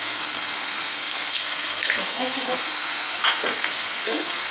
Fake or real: fake